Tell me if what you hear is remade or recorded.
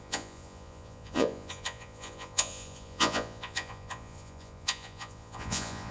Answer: remade